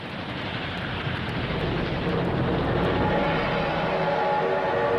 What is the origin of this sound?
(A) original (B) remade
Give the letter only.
A